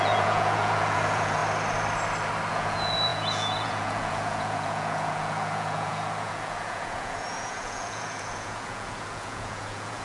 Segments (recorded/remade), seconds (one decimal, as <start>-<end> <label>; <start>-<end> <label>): 0.0-1.4 remade; 1.4-2.5 recorded; 2.5-10.0 remade